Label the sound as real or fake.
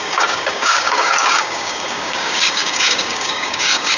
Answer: fake